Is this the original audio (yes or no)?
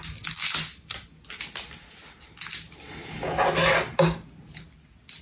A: yes